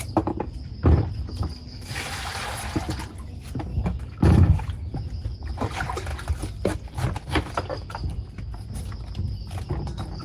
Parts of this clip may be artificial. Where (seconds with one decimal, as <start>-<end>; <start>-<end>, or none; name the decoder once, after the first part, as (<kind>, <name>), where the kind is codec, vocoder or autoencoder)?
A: 1.6-2.3 (autoencoder, DAC-VAE); 3.7-4.6